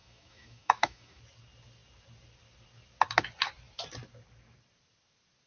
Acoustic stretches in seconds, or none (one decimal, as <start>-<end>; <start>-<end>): 1.2-5.5